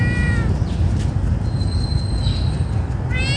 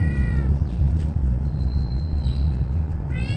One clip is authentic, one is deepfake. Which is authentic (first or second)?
first